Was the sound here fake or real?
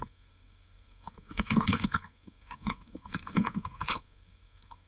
fake